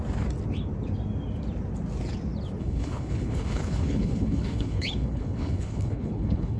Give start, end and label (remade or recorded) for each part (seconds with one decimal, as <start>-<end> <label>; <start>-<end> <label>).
0.0-2.6 recorded; 2.6-6.6 remade